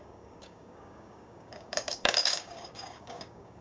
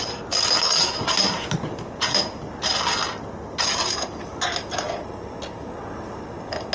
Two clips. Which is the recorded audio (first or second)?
second